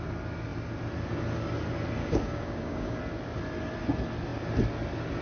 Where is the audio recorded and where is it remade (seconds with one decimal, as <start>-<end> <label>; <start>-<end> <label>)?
0.0-2.0 recorded; 2.0-3.0 remade; 3.0-5.2 recorded